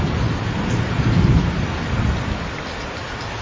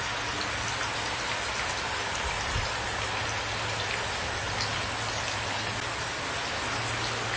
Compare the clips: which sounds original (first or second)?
second